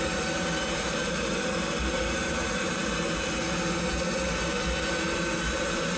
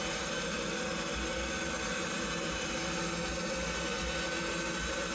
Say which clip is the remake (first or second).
first